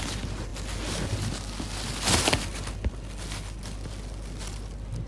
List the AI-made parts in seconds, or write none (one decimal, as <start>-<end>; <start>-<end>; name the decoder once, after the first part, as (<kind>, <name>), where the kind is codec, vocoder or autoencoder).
none

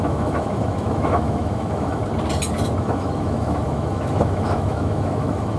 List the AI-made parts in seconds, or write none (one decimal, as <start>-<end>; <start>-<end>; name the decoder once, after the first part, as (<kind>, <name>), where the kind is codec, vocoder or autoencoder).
0.0-2.0 (autoencoder, DAC-VAE); 2.8-5.6

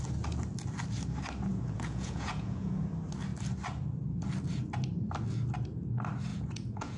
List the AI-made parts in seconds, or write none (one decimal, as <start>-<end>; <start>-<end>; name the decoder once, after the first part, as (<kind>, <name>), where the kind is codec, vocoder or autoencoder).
1.5-2.8 (vocoder, Vocos); 6.3-7.0

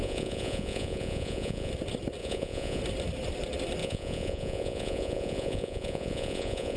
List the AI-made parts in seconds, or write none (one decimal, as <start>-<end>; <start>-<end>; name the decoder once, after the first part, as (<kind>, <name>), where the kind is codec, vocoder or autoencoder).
0.0-1.7 (vocoder, Vocos); 2.2-2.8; 3.8-6.8

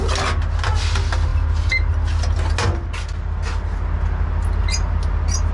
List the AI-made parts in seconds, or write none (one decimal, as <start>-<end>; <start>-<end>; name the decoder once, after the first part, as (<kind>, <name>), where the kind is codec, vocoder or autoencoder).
none

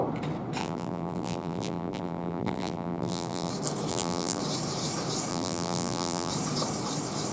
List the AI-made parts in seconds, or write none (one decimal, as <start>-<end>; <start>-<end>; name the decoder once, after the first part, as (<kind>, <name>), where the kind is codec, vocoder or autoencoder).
0.6-3.5 (vocoder, BigVGAN v2); 3.9-4.4; 5.3-6.3